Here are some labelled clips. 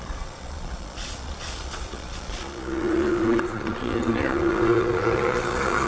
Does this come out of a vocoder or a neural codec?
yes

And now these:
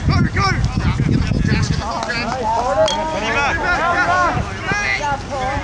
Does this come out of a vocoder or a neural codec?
no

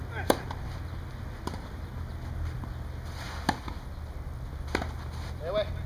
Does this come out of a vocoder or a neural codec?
no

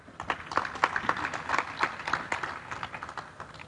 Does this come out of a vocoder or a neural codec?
no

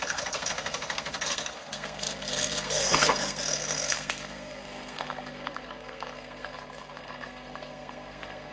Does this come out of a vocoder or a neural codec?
yes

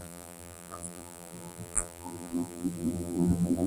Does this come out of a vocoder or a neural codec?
yes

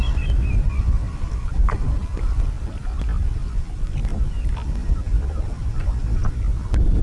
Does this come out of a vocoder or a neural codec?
yes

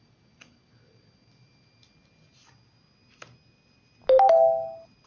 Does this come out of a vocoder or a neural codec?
no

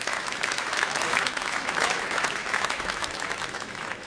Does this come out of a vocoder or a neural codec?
yes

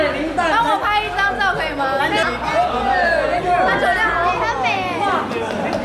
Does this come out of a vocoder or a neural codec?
no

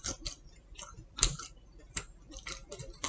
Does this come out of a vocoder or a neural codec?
yes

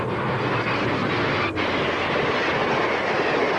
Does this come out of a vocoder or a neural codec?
no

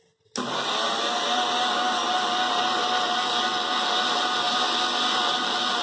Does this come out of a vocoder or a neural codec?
no